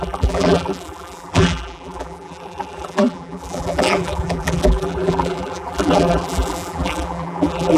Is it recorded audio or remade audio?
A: remade